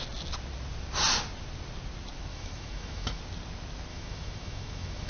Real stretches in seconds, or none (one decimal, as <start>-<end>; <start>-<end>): 0.0-2.3; 3.2-3.9